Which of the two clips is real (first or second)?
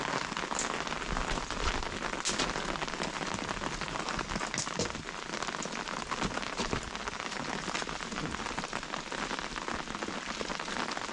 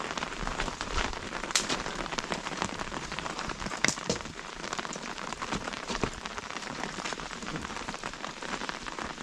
first